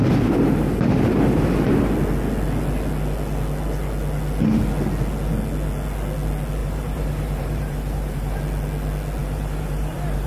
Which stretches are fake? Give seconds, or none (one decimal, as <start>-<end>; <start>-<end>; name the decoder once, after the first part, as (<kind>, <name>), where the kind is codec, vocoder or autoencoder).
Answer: 0.0-1.9 (vocoder, BigVGAN v2); 6.6-8.4; 9.2-10.3